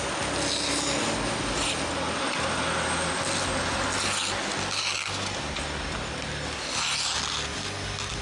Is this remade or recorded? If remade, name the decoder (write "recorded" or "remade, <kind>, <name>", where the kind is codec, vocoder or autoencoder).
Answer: recorded